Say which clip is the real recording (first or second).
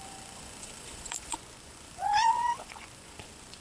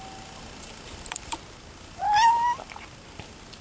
second